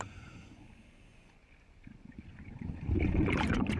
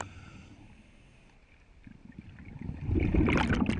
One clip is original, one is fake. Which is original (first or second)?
second